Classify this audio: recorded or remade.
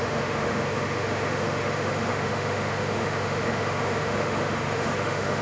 remade